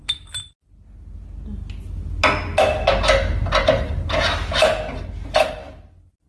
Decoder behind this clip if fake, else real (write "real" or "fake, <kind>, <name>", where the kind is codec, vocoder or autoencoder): real